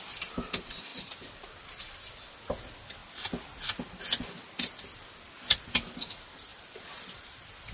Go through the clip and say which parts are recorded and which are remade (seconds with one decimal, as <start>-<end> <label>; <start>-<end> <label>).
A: 0.0-0.9 recorded; 0.9-1.6 remade; 1.6-6.5 recorded; 6.5-7.7 remade